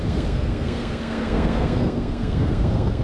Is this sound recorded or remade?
remade